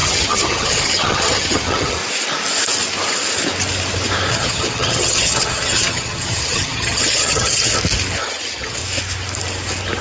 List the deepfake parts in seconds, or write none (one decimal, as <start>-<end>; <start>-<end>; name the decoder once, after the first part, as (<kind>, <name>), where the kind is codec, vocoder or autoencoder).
0.0-2.0 (vocoder, HiFi-GAN); 4.3-7.7; 8.2-8.8